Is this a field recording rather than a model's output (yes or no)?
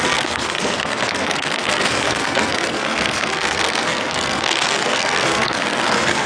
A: no